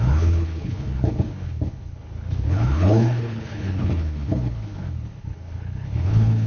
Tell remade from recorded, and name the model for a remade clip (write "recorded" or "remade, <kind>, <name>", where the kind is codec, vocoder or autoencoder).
remade, codec, HILCodec